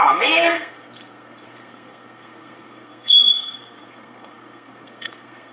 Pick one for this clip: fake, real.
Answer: fake